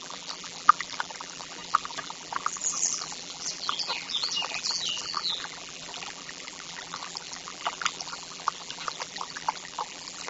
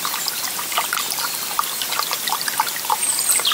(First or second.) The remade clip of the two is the first